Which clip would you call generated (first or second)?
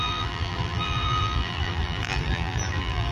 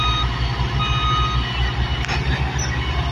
first